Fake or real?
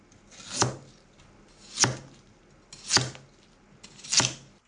real